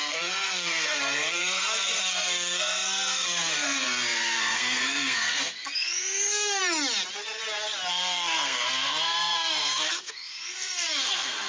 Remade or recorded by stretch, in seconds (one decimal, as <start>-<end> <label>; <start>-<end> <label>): 0.0-6.6 remade; 6.6-7.9 recorded; 7.9-11.5 remade